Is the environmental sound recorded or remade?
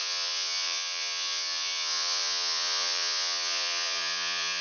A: remade